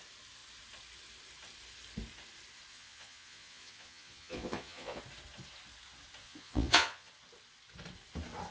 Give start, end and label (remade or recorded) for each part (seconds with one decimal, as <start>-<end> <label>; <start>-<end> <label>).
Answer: 0.0-2.7 recorded; 2.7-5.0 remade; 5.0-6.2 recorded; 6.2-7.1 remade; 7.1-8.5 recorded